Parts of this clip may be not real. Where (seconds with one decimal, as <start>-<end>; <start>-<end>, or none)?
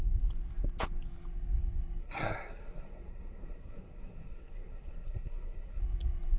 2.0-5.8